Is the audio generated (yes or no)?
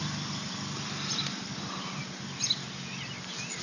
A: no